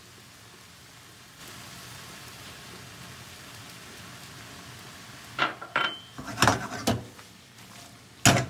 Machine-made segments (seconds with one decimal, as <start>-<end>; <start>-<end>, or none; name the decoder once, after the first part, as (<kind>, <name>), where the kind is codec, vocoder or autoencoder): none